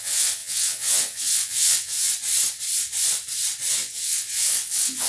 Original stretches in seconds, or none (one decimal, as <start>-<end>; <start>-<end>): 2.1-3.7

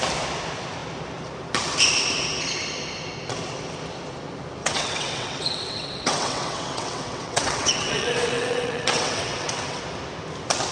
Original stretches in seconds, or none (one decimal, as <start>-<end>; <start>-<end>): 0.0-4.6; 9.8-10.7

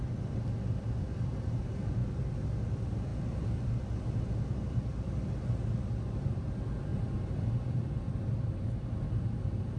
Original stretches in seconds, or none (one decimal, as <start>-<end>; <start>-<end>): 0.0-9.8

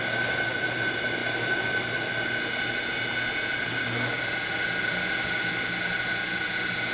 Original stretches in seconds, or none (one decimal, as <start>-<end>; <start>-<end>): 0.0-6.9